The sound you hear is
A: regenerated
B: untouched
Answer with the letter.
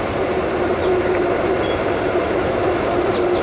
A